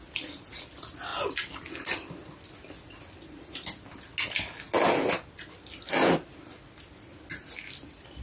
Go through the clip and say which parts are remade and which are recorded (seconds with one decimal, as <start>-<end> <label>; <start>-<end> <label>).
0.0-8.2 recorded